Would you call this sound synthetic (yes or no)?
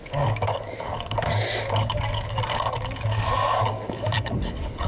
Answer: yes